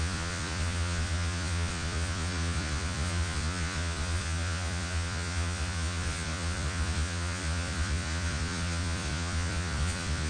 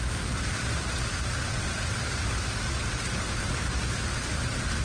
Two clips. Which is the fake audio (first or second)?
first